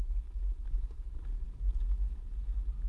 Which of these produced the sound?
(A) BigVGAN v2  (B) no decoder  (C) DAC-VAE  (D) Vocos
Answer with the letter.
B